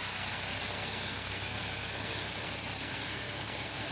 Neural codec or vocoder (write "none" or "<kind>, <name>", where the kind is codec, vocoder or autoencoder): codec, SNAC